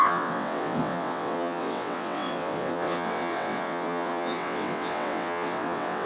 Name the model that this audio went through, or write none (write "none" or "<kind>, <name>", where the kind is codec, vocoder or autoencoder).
vocoder, WaveNeXt